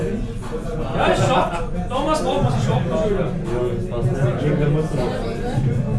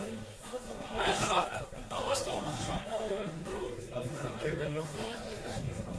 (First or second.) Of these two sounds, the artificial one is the second